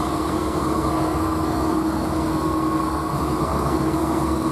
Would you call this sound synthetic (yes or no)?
yes